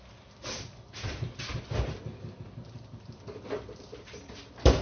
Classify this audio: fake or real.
real